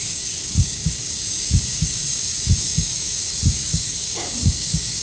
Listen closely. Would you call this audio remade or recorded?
remade